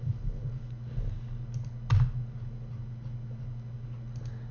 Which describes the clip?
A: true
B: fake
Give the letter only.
A